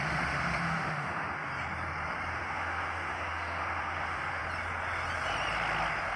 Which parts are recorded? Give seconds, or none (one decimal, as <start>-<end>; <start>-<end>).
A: 1.5-2.3; 4.4-6.2